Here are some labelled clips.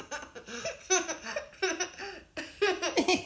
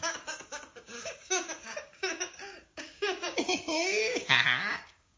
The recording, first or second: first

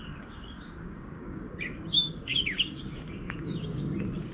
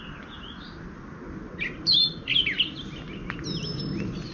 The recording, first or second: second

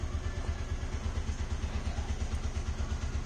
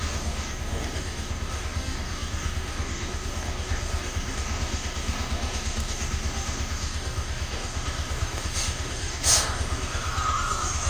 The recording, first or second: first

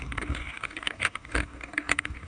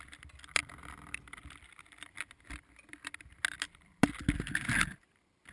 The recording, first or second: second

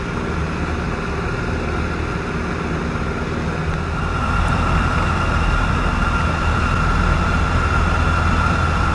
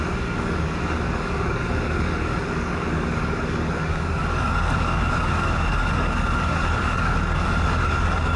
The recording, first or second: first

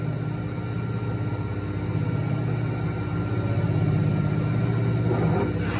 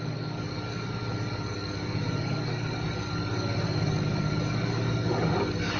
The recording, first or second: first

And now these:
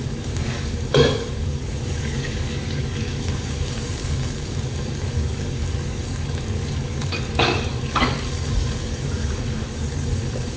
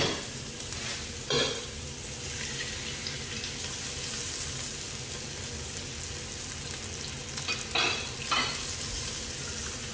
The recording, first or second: second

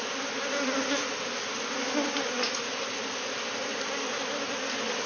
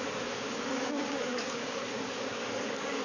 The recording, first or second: first